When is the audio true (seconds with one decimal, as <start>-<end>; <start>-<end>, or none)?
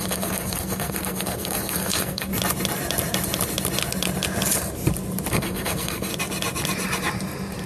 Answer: 2.3-5.3; 6.1-7.7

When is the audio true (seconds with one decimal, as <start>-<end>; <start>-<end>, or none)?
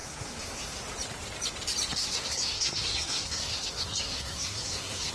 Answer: 0.8-2.0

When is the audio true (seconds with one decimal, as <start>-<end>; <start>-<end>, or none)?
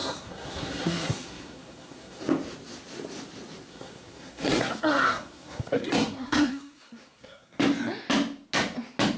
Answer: 2.2-3.7; 7.6-9.2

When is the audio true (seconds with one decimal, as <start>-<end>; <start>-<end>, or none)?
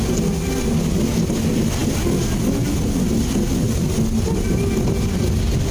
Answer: 0.0-5.7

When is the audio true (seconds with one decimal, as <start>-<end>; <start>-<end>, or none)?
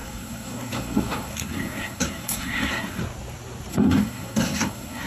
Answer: 3.0-3.7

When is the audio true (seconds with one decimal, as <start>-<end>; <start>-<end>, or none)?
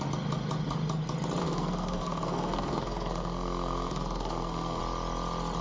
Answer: 0.0-1.4; 4.8-5.6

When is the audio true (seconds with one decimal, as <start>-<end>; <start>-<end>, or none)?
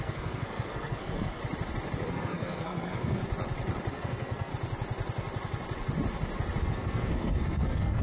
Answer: 1.4-2.1; 3.2-3.9; 4.5-6.6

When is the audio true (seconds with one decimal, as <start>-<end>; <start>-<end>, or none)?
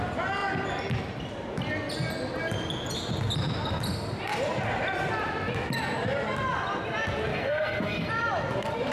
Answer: 0.0-7.3; 8.1-8.9